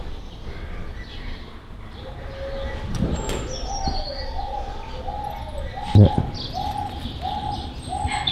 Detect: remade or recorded recorded